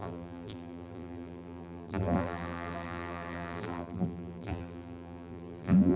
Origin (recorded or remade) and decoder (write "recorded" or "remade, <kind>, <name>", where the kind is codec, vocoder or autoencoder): remade, vocoder, BigVGAN v2